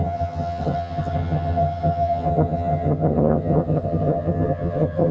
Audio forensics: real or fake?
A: fake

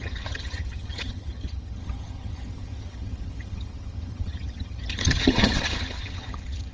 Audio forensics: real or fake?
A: fake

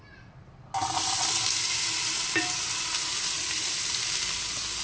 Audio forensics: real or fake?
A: real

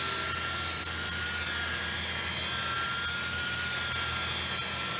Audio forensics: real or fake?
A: real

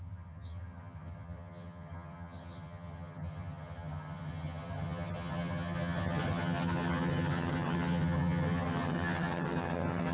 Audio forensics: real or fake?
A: fake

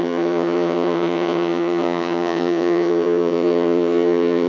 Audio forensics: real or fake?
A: fake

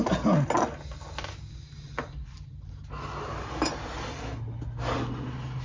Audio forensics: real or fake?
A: real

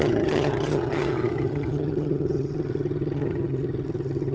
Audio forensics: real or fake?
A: fake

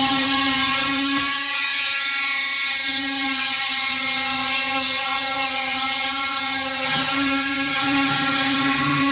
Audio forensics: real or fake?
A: fake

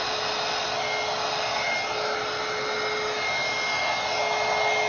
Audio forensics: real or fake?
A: real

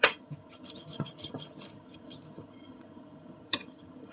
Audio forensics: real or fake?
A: fake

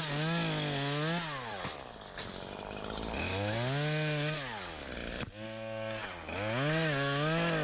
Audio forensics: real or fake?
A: real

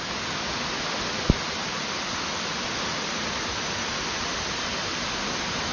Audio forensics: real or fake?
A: real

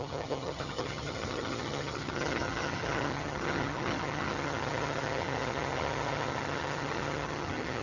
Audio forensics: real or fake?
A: fake